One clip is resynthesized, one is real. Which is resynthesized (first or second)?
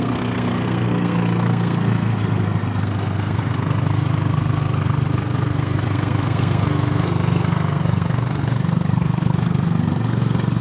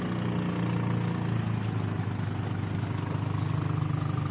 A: first